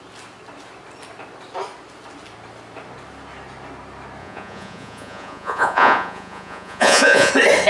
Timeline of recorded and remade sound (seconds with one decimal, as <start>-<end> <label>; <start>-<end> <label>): 0.0-4.2 recorded; 4.2-7.3 remade; 7.3-7.7 recorded